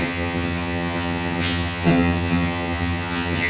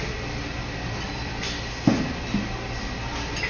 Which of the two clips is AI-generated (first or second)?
first